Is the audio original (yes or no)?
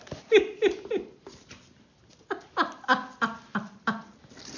yes